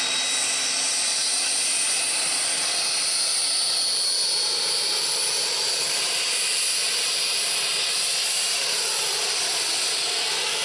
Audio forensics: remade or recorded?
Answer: recorded